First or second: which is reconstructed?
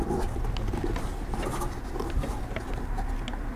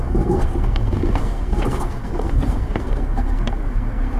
second